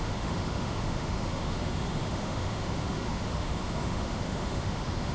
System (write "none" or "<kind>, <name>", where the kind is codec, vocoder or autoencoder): autoencoder, DAC-VAE